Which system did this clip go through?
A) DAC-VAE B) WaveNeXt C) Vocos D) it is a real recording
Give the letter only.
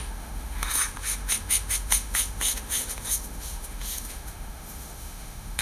A